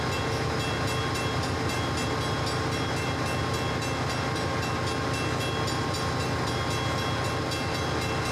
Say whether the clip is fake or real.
real